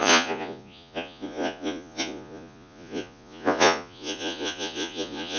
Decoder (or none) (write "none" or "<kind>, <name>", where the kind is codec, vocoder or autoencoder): vocoder, Vocos